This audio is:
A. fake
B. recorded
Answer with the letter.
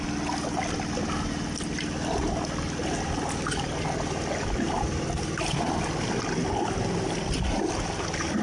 B